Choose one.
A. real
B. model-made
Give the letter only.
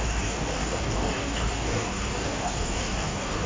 B